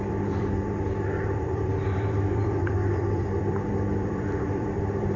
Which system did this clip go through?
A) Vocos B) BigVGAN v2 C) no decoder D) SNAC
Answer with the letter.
B